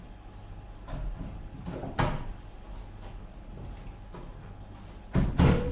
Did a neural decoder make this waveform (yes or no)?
no